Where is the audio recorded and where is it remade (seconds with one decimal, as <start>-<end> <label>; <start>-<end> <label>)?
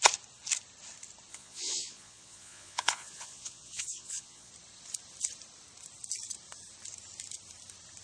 0.0-1.3 recorded; 1.3-4.5 remade; 4.5-8.0 recorded